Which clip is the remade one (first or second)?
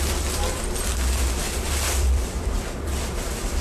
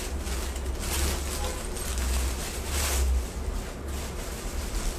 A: first